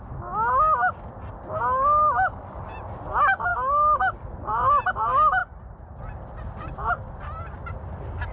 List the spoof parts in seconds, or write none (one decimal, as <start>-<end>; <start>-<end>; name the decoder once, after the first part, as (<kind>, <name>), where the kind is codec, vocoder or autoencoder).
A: none